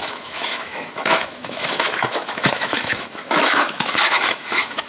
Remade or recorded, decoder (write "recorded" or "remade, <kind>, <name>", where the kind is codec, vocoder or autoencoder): remade, autoencoder, DAC-VAE